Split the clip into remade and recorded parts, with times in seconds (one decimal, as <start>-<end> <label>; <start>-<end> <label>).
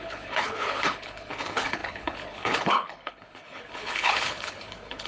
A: 0.0-5.1 remade